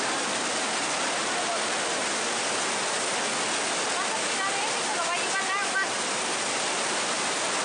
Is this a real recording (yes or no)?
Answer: yes